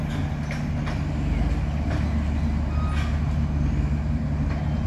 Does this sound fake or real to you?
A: real